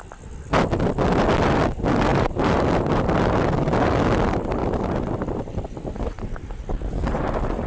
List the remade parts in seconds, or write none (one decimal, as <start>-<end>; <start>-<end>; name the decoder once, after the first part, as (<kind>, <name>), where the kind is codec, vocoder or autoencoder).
2.1-3.0 (vocoder, BigVGAN v2)